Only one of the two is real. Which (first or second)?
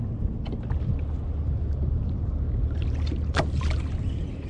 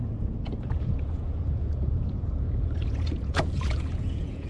first